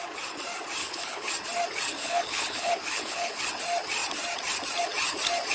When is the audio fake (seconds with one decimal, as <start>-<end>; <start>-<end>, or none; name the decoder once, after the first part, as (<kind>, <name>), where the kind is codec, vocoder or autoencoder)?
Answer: 0.8-1.3 (codec, HILCodec); 2.0-3.4